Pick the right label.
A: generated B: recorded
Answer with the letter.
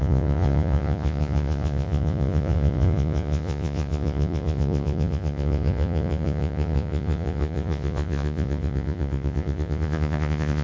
A